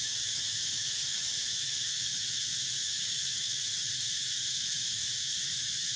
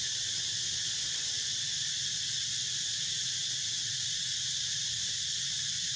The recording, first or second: second